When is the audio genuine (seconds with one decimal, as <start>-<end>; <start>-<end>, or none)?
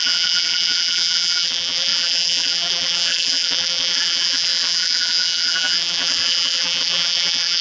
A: none